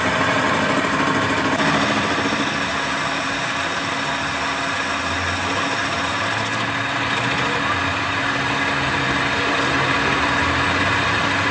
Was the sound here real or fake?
real